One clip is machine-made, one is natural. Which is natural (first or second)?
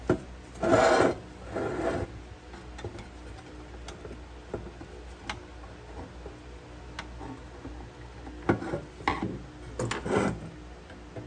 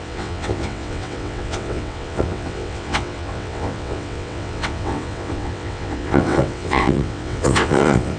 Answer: first